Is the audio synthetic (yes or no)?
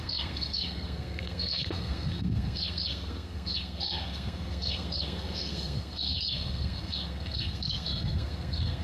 yes